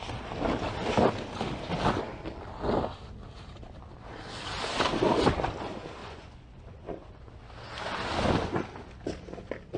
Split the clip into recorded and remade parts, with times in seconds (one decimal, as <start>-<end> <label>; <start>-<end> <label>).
0.0-6.0 recorded; 6.0-7.3 remade; 7.3-9.8 recorded